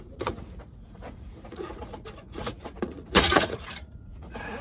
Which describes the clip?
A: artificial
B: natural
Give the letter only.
A